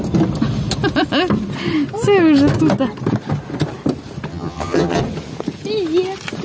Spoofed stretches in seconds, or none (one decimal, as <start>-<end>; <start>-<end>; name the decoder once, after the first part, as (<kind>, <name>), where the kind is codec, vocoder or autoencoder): 4.3-5.0 (vocoder, HiFi-GAN)